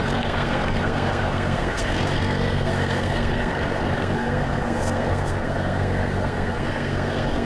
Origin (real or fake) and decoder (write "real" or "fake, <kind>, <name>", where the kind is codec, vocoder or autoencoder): fake, codec, SNAC